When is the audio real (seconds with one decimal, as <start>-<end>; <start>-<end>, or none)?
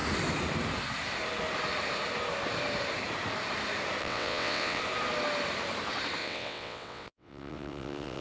0.0-4.0; 4.8-6.2